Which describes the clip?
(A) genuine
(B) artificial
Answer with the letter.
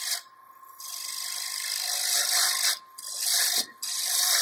A